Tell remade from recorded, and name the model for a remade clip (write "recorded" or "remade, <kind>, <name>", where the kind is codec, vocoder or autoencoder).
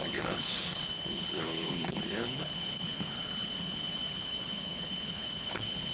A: remade, codec, HILCodec